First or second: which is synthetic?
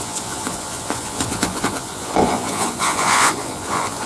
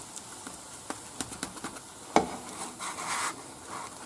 first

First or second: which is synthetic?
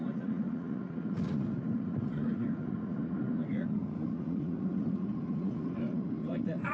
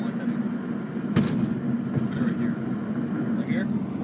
first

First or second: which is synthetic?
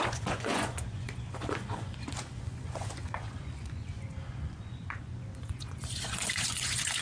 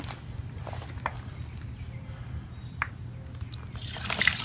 first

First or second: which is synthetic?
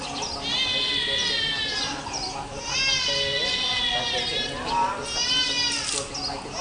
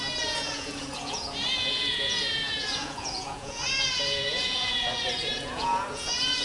second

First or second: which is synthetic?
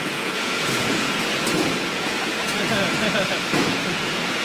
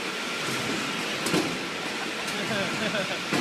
first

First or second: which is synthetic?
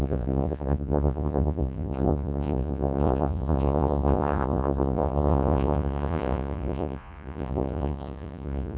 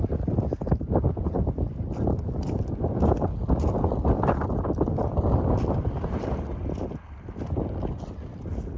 first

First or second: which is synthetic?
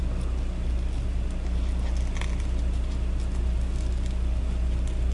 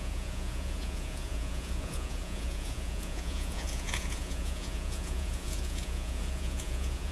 second